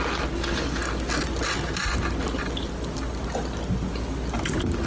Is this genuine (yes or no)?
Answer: yes